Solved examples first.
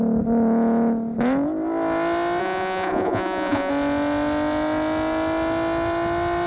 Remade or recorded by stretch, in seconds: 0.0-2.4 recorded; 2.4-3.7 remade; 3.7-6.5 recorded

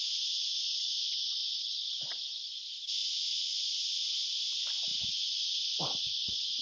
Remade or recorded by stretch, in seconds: 0.0-6.6 recorded

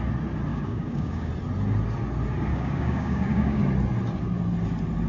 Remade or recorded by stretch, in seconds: 0.0-0.5 recorded; 0.5-1.3 remade; 1.3-2.5 recorded; 2.5-3.6 remade; 3.6-5.1 recorded

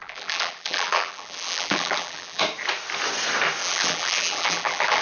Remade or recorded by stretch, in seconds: 0.0-2.4 remade; 2.4-3.6 recorded; 3.6-5.0 remade

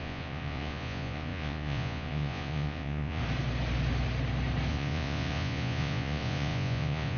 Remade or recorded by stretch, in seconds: 0.0-3.2 remade; 3.2-4.7 recorded; 4.7-7.2 remade

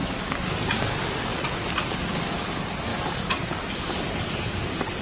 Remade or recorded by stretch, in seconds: 0.0-1.3 remade; 1.3-2.3 recorded; 2.3-2.9 remade; 2.9-4.0 recorded; 4.0-5.0 remade

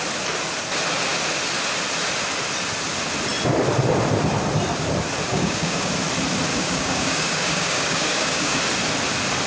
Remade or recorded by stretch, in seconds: 0.0-5.3 recorded; 5.3-5.9 remade; 5.9-6.5 recorded; 6.5-8.6 remade; 8.6-9.5 recorded

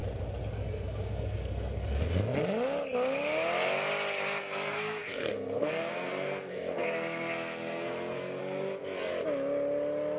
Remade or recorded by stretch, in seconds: 0.0-0.5 recorded; 0.5-2.4 remade; 2.4-4.4 recorded; 4.4-9.1 remade; 9.1-10.2 recorded